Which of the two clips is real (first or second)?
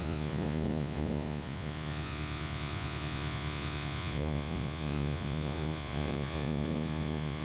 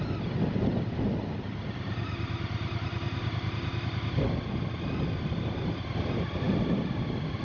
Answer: second